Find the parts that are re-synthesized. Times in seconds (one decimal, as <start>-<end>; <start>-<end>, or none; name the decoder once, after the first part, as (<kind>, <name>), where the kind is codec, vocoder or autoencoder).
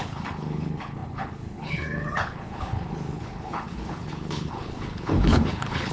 0.0-5.9 (codec, HILCodec)